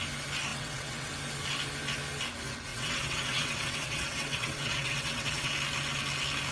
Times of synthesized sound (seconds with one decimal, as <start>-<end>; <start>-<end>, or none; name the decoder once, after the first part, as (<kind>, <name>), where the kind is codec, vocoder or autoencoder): 0.5-1.1 (vocoder, WaveNeXt); 2.7-5.5